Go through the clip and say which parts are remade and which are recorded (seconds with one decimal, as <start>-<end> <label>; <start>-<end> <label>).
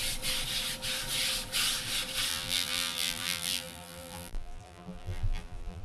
0.0-2.3 recorded; 2.3-5.8 remade